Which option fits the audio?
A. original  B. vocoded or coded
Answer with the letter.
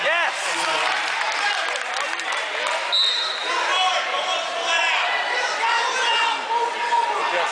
A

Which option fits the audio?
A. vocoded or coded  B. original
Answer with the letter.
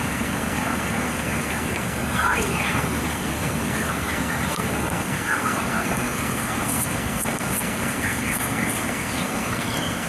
A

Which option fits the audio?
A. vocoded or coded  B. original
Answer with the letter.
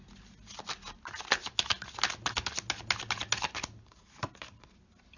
B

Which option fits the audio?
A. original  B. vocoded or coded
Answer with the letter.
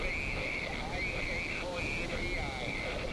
A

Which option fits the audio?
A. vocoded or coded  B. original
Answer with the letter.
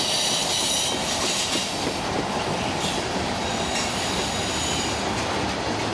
B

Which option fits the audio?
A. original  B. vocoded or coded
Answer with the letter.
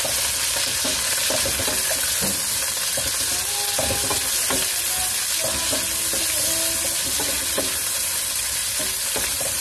A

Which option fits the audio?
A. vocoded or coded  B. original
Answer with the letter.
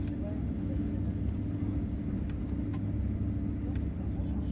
B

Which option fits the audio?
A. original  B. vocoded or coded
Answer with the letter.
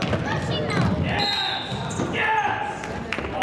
A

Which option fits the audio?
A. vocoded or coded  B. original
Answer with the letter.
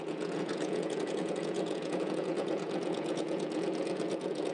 A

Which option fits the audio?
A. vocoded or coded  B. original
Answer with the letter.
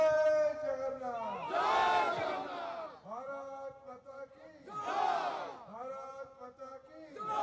B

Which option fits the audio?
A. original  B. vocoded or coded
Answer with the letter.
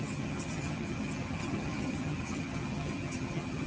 B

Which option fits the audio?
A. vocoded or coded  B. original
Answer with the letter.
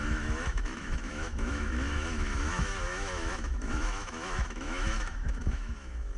A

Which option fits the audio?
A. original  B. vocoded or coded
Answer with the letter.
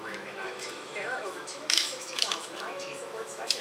B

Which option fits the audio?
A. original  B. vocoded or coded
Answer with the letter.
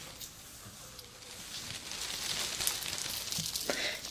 A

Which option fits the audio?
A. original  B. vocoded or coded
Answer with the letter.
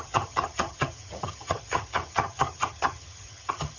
B